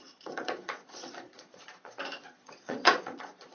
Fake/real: fake